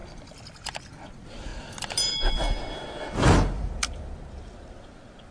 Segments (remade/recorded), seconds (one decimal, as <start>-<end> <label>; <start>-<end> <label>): 0.0-5.3 recorded